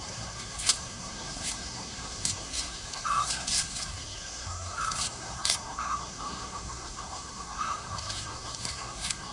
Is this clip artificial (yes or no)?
yes